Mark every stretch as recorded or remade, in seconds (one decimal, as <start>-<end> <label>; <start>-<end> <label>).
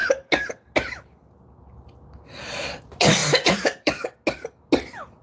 0.0-3.2 recorded; 3.2-4.0 remade; 4.0-5.2 recorded